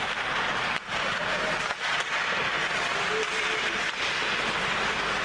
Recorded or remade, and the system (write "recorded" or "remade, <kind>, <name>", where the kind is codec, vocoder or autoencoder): recorded